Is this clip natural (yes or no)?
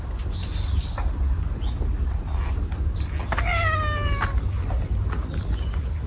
yes